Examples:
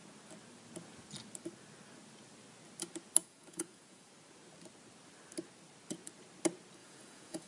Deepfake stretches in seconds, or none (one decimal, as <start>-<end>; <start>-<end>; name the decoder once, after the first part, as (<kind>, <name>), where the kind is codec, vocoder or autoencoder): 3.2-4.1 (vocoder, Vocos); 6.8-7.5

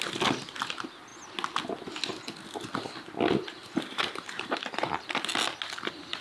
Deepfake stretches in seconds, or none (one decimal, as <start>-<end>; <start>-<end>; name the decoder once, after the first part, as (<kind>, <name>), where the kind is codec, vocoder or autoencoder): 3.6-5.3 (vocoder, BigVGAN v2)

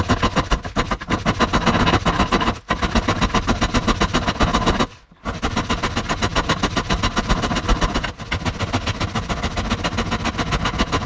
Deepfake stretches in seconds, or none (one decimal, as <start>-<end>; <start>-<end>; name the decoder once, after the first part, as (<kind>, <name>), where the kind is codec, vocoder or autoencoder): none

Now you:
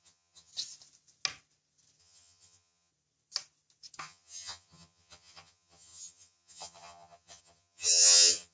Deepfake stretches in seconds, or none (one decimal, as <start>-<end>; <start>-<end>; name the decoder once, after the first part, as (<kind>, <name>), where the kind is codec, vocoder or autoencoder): 0.0-0.5 (vocoder, HiFi-GAN); 2.0-2.9; 4.0-8.5